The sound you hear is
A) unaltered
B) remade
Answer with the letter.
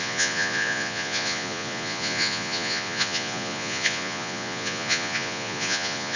B